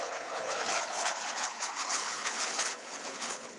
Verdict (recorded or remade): remade